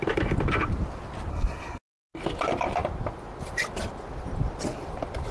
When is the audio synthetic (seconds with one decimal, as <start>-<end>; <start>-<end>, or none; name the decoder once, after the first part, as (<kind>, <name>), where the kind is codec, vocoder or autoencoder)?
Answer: 1.3-1.8 (codec, SNAC)